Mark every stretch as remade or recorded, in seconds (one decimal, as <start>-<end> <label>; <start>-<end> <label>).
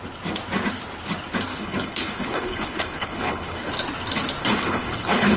0.0-1.5 recorded; 1.5-3.7 remade; 3.7-4.4 recorded; 4.4-5.4 remade